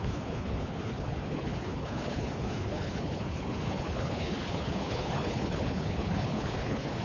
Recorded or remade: remade